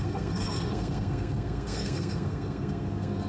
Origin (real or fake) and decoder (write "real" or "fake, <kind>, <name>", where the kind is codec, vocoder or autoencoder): fake, codec, SNAC